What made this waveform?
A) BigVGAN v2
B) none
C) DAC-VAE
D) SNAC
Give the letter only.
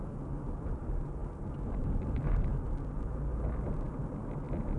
B